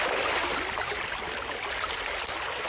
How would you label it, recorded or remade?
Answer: recorded